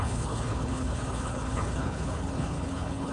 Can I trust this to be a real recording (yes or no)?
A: no